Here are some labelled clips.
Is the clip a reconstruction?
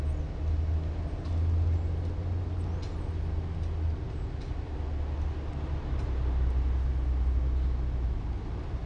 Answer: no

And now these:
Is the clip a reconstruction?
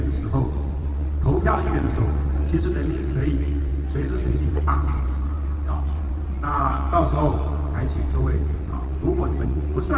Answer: yes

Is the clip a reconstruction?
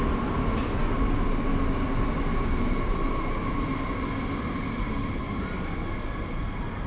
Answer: no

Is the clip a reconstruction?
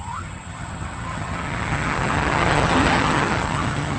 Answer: yes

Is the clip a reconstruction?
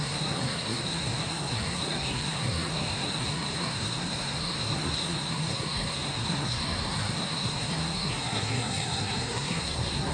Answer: yes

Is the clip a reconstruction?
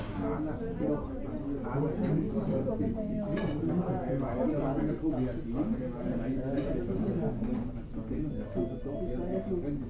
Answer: no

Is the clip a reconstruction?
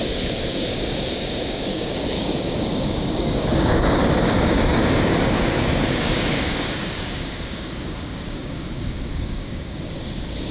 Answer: yes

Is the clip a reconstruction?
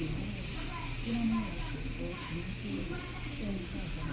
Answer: no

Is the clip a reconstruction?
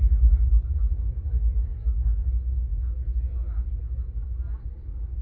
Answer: no